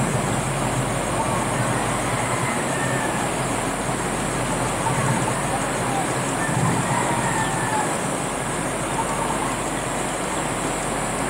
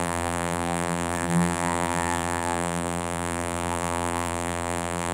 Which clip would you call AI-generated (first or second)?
second